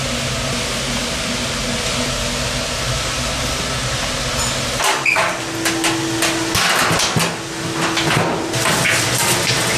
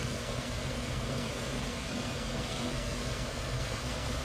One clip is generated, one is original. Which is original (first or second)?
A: first